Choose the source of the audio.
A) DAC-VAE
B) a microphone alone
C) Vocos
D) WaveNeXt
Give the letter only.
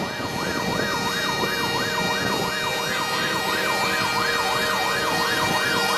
B